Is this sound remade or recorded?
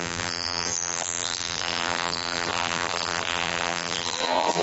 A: remade